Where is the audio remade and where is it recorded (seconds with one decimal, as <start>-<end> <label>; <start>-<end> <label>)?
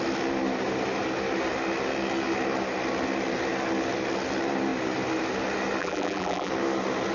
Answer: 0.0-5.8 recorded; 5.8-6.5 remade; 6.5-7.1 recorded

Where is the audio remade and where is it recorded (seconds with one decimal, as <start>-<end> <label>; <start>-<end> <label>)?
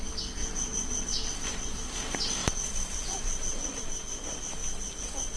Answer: 0.0-0.4 recorded; 0.4-1.1 remade; 1.1-2.4 recorded; 2.4-3.8 remade; 3.8-5.4 recorded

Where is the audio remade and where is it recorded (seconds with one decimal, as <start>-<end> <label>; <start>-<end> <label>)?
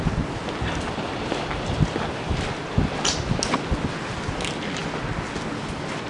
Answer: 0.0-6.1 recorded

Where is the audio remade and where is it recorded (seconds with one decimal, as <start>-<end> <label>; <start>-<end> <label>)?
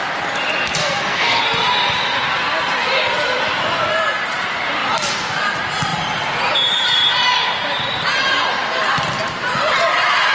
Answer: 0.0-0.8 recorded; 0.8-1.4 remade; 1.4-10.3 recorded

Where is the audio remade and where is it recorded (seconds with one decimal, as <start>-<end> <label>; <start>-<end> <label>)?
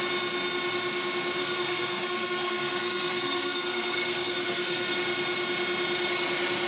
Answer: 0.0-1.4 recorded; 1.4-4.9 remade; 4.9-6.7 recorded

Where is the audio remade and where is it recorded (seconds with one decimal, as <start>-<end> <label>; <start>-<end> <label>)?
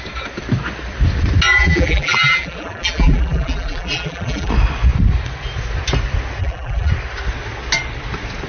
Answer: 0.0-1.5 recorded; 1.5-4.5 remade; 4.5-6.4 recorded; 6.4-6.9 remade; 6.9-8.5 recorded